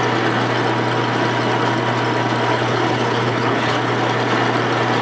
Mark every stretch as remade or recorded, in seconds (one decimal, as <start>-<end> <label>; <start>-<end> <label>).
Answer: 0.0-2.5 recorded; 2.5-3.9 remade; 3.9-5.0 recorded